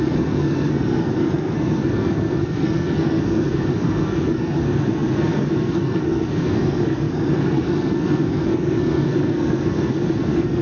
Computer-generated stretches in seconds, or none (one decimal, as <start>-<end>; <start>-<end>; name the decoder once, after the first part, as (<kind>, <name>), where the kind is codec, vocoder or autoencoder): 0.0-10.6 (codec, SNAC)